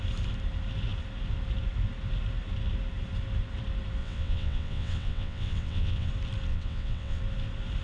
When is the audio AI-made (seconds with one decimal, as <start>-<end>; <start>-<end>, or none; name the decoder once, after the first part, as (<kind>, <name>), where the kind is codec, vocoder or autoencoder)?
4.0-6.1 (vocoder, WaveNeXt); 6.5-7.2